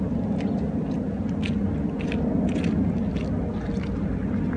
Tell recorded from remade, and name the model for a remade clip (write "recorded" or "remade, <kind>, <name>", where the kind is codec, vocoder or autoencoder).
recorded